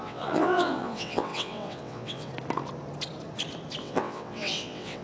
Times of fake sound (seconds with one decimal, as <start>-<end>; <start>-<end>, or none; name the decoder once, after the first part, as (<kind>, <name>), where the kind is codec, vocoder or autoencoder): 0.0-2.3 (vocoder, WaveNeXt); 3.8-5.0